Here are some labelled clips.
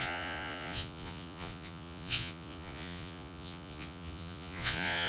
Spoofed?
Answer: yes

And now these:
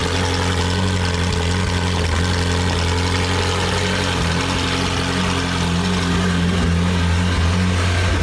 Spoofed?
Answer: no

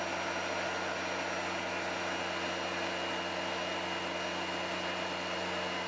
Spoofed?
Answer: no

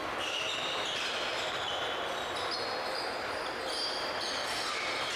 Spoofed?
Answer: no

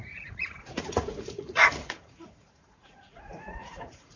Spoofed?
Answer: yes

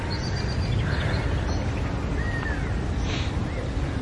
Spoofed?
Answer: no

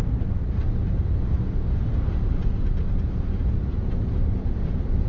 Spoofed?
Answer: no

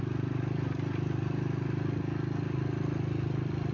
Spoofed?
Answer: no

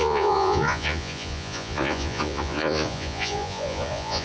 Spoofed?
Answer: yes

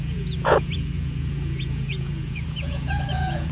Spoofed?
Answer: yes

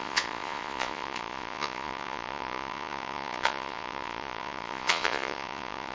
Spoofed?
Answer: yes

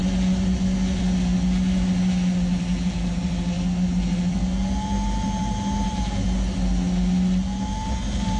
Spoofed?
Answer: no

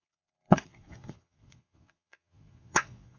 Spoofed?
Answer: yes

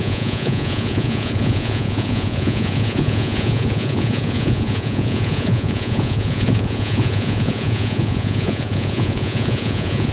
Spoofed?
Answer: yes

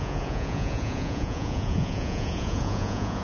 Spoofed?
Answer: yes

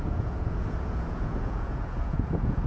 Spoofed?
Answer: yes